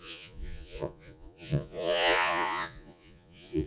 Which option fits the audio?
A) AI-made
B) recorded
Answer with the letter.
A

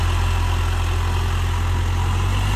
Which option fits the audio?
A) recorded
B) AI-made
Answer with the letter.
A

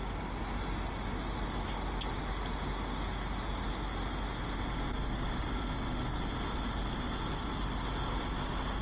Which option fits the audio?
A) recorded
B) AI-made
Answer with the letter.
A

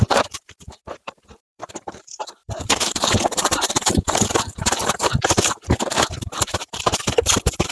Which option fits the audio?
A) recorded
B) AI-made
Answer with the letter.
B